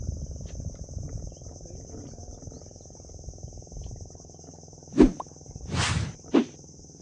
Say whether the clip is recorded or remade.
recorded